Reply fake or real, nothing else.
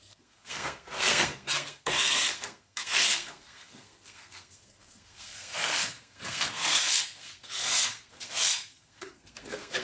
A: fake